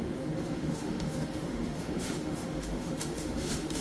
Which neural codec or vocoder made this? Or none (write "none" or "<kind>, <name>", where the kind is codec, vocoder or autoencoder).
autoencoder, DAC-VAE